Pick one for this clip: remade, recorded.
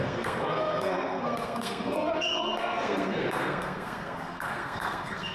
remade